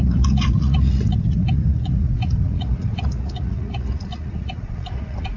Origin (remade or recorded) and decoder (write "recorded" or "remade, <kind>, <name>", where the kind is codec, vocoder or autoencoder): remade, vocoder, Vocos